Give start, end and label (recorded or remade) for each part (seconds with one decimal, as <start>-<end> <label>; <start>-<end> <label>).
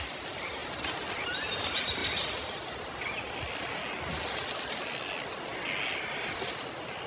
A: 0.0-7.1 recorded